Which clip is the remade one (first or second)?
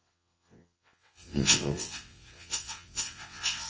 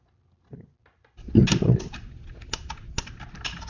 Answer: first